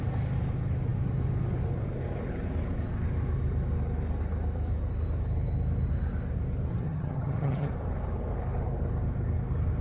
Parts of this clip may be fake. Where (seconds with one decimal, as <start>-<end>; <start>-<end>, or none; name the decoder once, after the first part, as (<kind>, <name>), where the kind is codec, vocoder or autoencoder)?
6.7-7.7 (vocoder, HiFi-GAN)